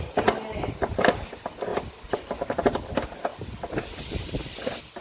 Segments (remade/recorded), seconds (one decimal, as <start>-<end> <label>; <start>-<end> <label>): 0.0-5.0 recorded